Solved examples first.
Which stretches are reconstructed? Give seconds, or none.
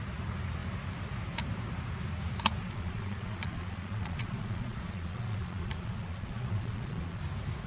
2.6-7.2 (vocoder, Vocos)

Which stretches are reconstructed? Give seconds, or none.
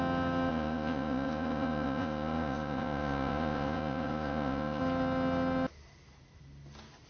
0.5-4.8 (vocoder, Vocos)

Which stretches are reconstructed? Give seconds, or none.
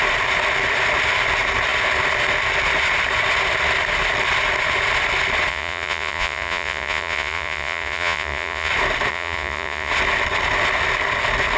5.5-8.7 (vocoder, Vocos); 9.1-9.9